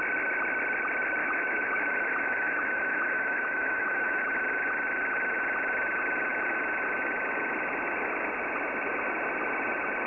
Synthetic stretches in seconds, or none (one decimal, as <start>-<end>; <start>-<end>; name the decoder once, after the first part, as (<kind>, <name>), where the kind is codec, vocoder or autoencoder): 1.2-4.2 (autoencoder, DAC-VAE)